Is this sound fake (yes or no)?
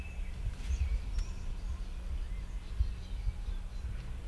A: no